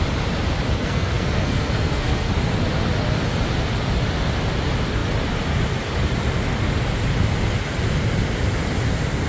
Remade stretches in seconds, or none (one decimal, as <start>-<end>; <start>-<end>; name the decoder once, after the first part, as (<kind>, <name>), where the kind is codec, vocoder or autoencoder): 0.7-2.3 (codec, SNAC)